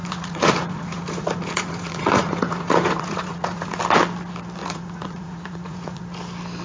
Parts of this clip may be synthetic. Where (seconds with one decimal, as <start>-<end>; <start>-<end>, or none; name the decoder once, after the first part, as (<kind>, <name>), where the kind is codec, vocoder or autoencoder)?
0.0-3.8 (vocoder, Vocos); 4.6-6.0